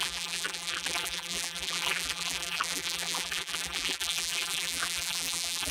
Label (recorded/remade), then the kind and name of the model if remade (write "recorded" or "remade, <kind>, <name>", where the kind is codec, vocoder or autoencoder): remade, vocoder, BigVGAN v2